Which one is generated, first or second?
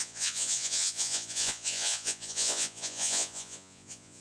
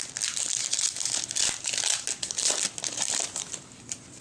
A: first